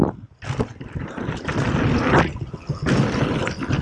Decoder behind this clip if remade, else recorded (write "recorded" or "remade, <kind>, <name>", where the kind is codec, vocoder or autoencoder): recorded